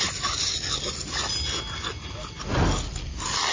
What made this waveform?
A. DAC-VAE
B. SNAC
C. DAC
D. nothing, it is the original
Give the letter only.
D